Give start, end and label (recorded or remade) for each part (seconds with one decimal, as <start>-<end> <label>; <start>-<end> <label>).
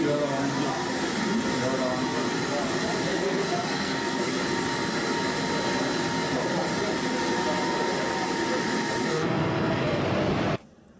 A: 0.0-3.1 recorded; 3.1-4.3 remade; 4.3-9.1 recorded; 9.1-10.0 remade; 10.0-11.0 recorded